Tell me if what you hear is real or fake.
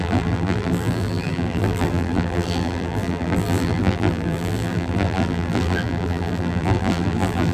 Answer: fake